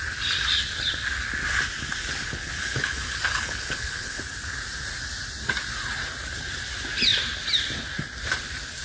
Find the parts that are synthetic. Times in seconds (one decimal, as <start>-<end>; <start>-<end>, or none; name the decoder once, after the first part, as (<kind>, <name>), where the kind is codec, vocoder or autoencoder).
2.2-4.2 (codec, HILCodec)